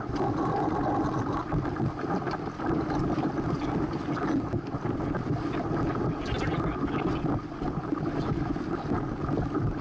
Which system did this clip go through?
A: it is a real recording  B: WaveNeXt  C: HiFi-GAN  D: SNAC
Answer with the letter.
A